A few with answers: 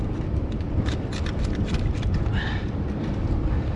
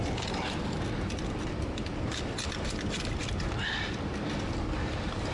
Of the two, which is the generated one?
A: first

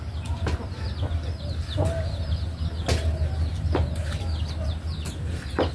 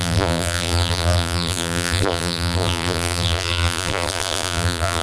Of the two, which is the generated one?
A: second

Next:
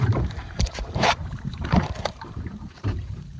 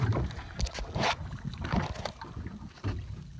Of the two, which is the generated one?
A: first